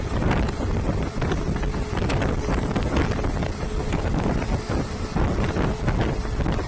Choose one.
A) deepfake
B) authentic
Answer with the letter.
B